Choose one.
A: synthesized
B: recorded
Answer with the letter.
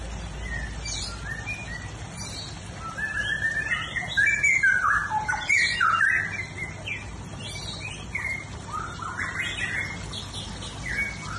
B